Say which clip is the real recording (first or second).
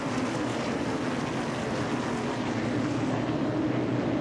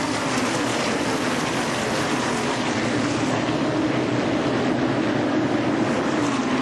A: first